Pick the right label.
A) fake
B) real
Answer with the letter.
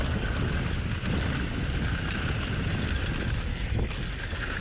B